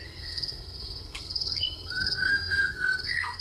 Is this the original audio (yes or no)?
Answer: no